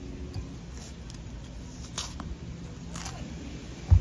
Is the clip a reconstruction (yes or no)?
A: no